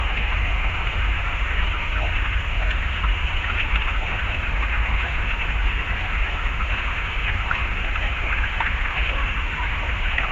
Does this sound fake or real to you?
fake